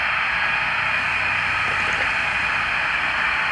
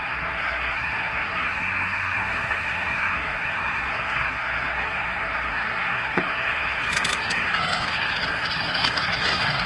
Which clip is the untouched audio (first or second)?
first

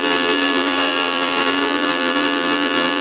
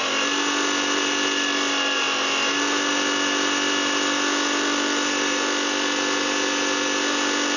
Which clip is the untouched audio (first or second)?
second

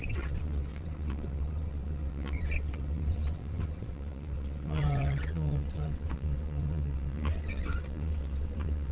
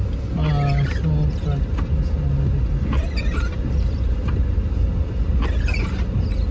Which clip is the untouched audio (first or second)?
second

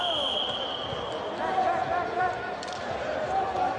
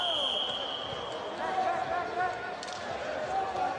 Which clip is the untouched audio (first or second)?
second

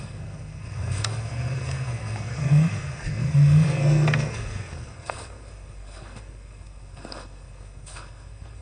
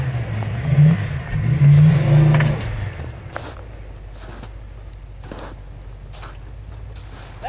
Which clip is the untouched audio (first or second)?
second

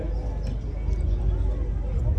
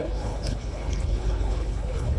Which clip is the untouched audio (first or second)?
first